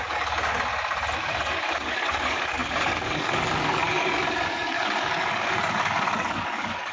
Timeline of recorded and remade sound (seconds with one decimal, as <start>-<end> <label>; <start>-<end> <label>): 0.0-0.7 remade; 0.7-1.2 recorded; 1.2-6.9 remade